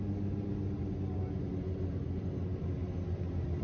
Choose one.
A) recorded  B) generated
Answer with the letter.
A